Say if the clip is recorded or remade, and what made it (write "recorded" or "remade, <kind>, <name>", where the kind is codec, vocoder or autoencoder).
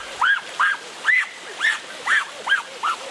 remade, vocoder, BigVGAN v2